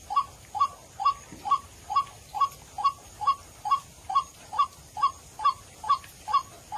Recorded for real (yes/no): yes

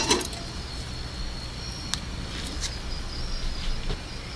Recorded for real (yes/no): yes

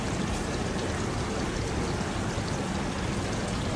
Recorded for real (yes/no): yes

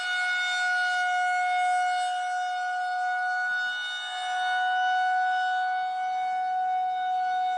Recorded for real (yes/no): yes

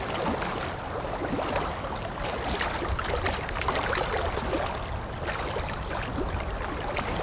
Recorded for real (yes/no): yes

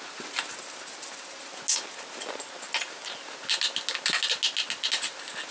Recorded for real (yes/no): yes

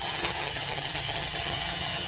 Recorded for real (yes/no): no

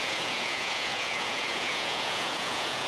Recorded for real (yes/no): no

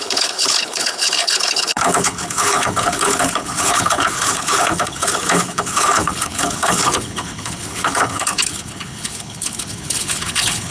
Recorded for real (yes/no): no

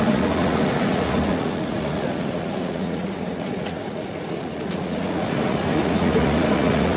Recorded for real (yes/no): no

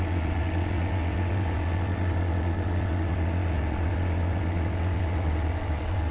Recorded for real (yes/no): no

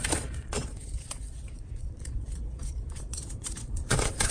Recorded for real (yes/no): no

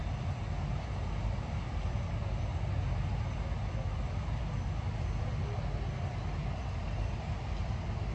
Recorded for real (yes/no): yes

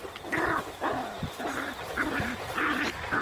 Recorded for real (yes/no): yes